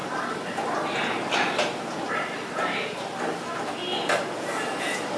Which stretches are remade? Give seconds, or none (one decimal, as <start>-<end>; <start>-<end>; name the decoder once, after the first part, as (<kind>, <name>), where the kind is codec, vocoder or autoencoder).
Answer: none